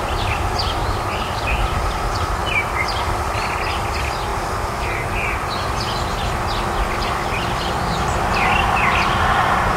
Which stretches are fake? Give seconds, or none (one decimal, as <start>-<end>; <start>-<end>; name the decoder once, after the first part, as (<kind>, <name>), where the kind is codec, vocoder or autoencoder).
0.0-4.3 (vocoder, BigVGAN v2); 7.6-9.8